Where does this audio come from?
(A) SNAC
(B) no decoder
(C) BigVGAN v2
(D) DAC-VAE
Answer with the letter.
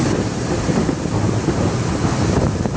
B